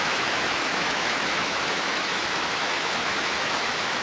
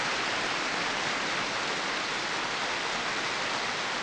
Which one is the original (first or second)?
second